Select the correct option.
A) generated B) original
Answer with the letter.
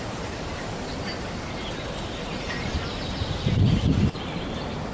B